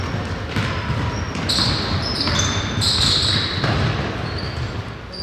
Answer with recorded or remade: recorded